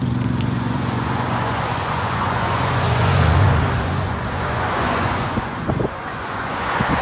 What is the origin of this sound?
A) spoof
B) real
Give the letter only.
A